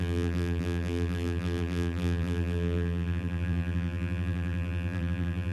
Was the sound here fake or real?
fake